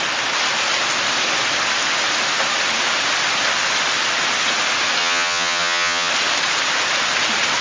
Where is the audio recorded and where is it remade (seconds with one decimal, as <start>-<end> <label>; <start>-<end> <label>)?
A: 0.0-5.0 recorded; 5.0-6.1 remade; 6.1-7.6 recorded

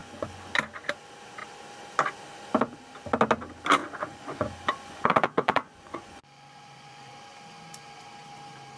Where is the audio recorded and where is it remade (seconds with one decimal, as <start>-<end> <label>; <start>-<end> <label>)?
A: 0.0-0.5 remade; 0.5-3.8 recorded; 3.8-7.1 remade; 7.1-8.8 recorded

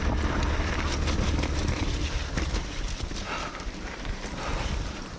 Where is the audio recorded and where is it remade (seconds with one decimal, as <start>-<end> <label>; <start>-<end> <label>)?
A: 0.0-1.6 recorded; 1.6-4.7 remade; 4.7-5.2 recorded

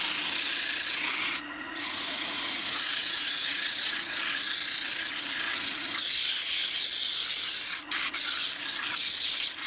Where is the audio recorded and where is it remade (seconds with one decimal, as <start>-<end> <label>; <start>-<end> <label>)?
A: 0.0-1.2 recorded; 1.2-4.2 remade; 4.2-9.7 recorded

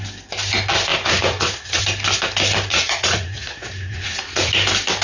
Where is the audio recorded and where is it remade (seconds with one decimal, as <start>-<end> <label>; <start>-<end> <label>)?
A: 0.0-0.9 recorded; 0.9-1.8 remade; 1.8-2.7 recorded; 2.7-4.5 remade; 4.5-5.0 recorded

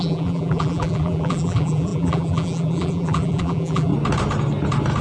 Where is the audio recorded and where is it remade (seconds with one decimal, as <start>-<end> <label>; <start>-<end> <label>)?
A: 0.0-3.9 remade; 3.9-5.0 recorded

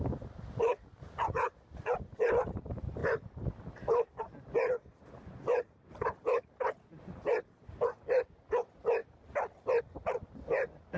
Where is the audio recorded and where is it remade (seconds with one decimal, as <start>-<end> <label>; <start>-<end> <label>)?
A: 0.0-3.0 recorded; 3.0-4.2 remade; 4.2-9.0 recorded; 9.0-9.8 remade; 9.8-11.0 recorded